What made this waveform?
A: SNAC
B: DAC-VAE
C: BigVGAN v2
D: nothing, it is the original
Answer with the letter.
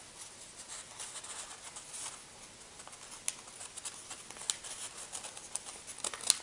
D